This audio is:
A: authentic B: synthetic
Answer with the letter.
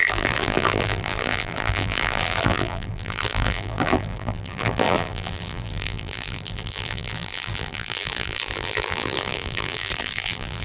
B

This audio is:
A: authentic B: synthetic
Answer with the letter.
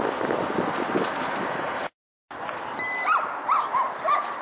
A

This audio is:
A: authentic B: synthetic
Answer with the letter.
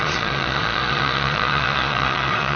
B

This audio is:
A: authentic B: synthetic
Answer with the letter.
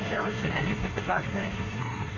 B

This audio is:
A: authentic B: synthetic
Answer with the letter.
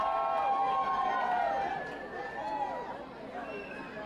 A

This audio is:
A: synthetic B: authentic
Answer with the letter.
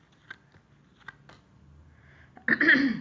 B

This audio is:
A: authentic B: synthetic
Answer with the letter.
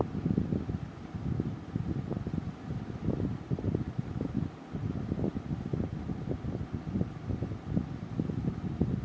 A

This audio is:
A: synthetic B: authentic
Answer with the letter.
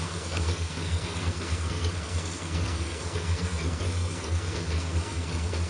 A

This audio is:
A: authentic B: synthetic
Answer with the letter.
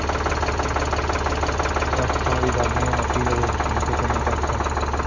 A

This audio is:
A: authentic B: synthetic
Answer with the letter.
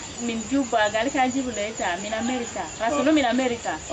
A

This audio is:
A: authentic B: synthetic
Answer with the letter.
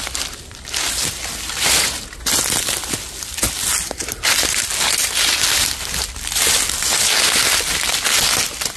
A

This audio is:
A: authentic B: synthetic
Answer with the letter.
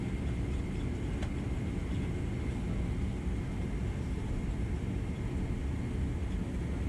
A